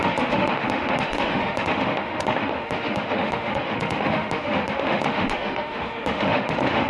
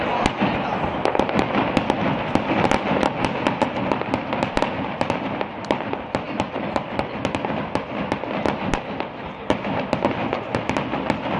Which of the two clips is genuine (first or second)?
second